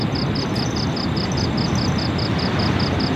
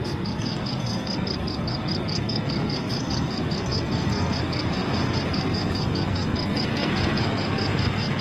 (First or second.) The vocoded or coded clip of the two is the second